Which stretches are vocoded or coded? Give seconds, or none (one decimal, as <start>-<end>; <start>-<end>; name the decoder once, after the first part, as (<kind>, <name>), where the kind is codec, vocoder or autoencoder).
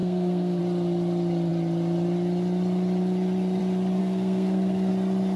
0.0-0.6 (codec, SNAC); 4.0-4.9